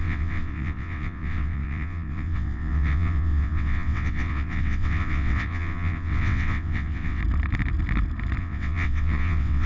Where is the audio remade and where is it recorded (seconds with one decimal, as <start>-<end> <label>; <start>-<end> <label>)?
0.0-7.2 remade; 7.2-8.4 recorded; 8.4-9.7 remade